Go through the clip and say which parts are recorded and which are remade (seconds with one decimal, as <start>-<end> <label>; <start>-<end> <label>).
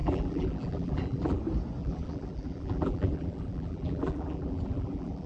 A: 0.0-1.4 remade; 1.4-1.8 recorded; 1.8-5.3 remade